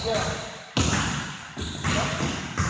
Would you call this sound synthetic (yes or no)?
no